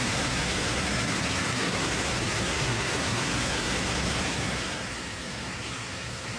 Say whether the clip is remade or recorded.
remade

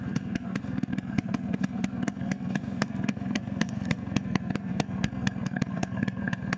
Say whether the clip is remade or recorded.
remade